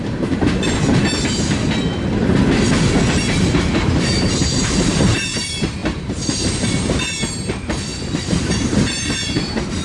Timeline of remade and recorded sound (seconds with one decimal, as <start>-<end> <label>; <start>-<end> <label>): 0.0-1.0 remade; 1.0-3.2 recorded; 3.2-7.9 remade; 7.9-8.4 recorded; 8.4-9.8 remade